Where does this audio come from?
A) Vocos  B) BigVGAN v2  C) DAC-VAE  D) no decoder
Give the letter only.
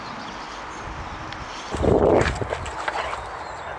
D